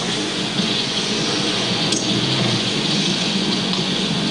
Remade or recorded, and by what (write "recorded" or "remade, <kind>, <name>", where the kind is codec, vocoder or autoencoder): remade, vocoder, Vocos